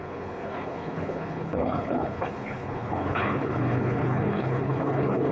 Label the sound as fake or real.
fake